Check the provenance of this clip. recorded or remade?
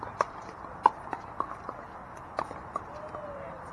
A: recorded